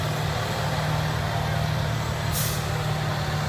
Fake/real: real